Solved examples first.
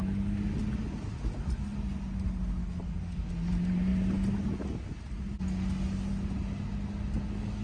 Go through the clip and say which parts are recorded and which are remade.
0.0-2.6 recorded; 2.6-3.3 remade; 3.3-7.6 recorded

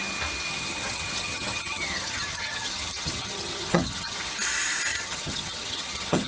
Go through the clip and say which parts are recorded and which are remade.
0.0-0.5 recorded; 0.5-4.3 remade; 4.3-4.9 recorded; 4.9-6.3 remade